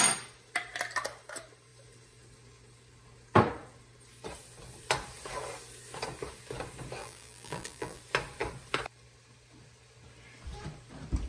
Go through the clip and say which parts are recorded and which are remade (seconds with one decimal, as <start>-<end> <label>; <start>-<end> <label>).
0.0-7.0 recorded; 7.0-8.0 remade; 8.0-11.3 recorded